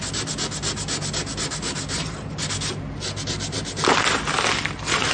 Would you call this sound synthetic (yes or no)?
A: no